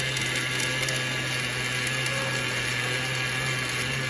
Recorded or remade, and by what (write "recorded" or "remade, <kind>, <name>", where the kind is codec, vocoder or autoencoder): recorded